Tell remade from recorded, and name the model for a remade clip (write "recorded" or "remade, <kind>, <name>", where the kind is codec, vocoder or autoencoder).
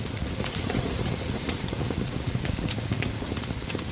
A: remade, vocoder, Vocos